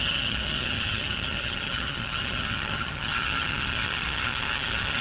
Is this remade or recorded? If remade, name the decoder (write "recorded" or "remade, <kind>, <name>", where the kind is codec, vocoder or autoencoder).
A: remade, vocoder, HiFi-GAN